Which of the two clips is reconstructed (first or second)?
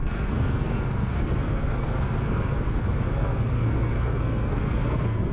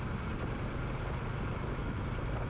first